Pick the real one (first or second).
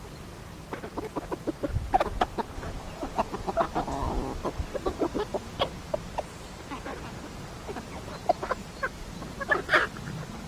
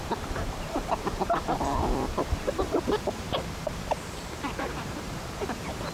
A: first